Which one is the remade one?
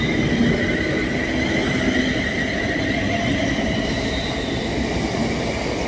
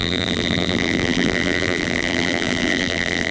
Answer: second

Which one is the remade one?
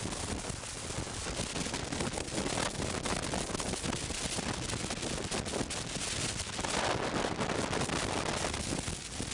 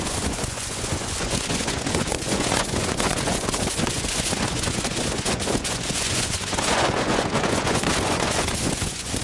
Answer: second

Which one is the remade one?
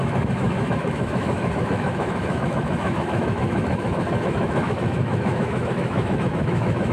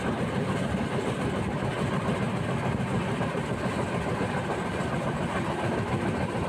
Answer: first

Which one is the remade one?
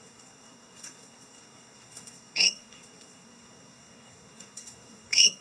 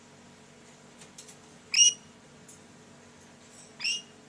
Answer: first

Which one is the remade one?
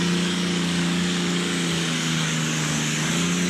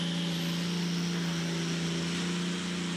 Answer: first